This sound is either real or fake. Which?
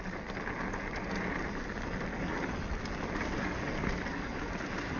real